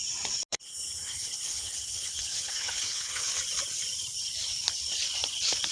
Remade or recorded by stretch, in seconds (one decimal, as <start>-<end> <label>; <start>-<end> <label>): 0.0-0.5 recorded; 0.5-3.3 remade; 3.3-5.7 recorded